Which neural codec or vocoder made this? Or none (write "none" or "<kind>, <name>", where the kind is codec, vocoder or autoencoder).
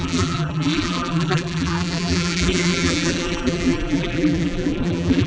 vocoder, BigVGAN v2